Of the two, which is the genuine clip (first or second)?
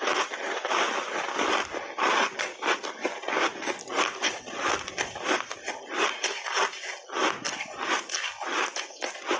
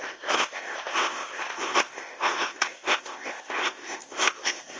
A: first